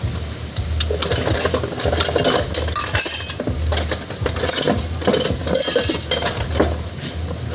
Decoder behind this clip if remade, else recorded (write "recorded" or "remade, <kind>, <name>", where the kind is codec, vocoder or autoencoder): recorded